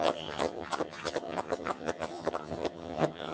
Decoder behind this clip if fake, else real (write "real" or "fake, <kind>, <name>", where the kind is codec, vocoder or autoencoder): fake, vocoder, HiFi-GAN